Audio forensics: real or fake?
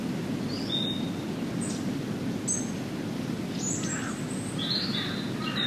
real